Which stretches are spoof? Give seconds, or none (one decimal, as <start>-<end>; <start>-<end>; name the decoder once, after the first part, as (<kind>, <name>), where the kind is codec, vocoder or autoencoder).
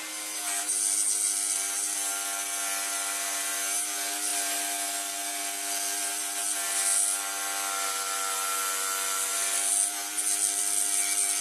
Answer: none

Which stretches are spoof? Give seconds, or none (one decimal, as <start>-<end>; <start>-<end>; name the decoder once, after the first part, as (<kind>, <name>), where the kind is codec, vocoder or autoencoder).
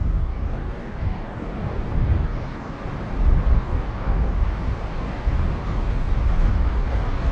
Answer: 0.0-2.8 (codec, DAC); 3.5-7.3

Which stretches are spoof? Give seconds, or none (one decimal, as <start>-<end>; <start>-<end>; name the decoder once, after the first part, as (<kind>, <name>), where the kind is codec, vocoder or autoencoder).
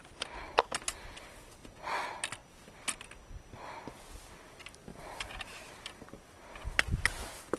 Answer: none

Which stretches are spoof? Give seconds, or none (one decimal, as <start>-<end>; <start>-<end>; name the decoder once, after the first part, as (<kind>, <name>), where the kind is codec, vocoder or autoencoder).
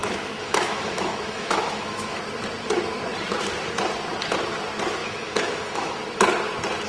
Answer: 0.0-2.2 (autoencoder, DAC-VAE); 5.0-6.0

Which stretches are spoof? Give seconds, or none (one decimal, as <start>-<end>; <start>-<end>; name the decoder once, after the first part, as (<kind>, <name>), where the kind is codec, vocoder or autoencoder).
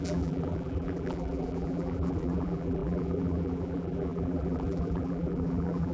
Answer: 0.0-5.9 (vocoder, BigVGAN v2)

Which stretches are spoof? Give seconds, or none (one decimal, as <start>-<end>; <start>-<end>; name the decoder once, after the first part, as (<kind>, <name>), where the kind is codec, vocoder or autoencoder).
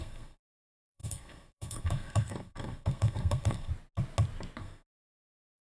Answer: 0.0-3.7 (codec, SNAC); 4.6-5.6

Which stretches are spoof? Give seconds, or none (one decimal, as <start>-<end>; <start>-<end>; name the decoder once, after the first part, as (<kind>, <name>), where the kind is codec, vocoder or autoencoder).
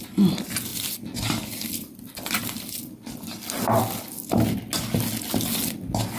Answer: 0.7-2.7 (vocoder, BigVGAN v2)